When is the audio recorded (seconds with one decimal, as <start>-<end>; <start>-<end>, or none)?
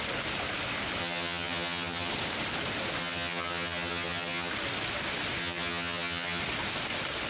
0.0-1.0; 2.1-3.0; 4.5-5.4; 6.4-7.3